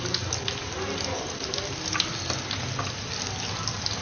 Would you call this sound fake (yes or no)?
no